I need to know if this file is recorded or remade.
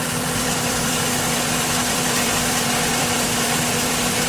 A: remade